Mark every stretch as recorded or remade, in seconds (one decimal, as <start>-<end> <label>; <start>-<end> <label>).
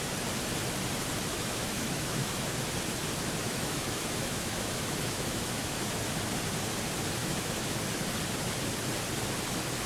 0.0-1.3 recorded; 1.3-2.5 remade; 2.5-3.4 recorded; 3.4-6.0 remade; 6.0-7.2 recorded; 7.2-7.8 remade; 7.8-9.9 recorded